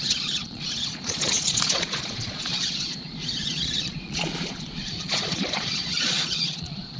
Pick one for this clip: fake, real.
fake